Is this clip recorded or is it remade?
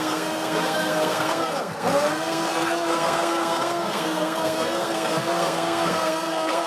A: remade